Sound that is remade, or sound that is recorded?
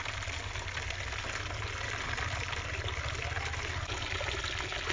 recorded